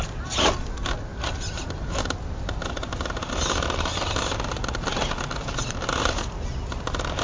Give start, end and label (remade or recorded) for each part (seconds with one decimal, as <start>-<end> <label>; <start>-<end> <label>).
0.0-7.2 recorded